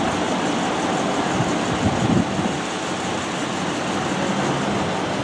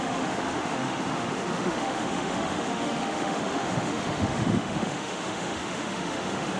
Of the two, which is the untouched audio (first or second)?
first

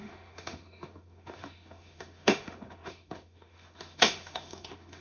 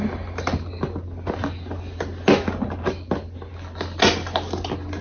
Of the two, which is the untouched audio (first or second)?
second